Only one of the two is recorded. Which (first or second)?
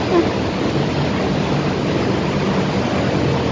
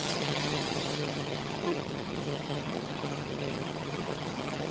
first